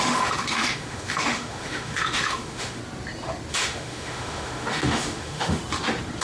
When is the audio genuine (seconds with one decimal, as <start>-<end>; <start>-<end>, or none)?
2.8-3.5; 5.6-6.2